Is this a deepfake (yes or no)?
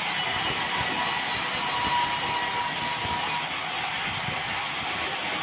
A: no